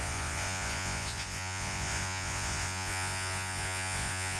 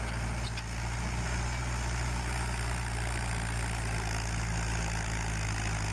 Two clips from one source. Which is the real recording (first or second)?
second